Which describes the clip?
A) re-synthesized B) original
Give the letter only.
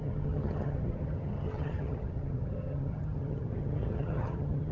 A